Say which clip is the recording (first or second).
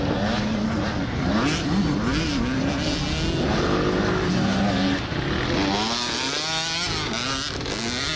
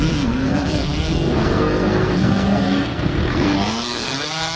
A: first